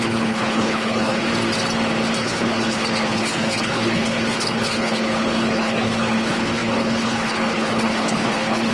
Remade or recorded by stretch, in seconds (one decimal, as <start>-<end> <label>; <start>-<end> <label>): 0.0-1.3 remade; 1.3-2.2 recorded; 2.2-8.7 remade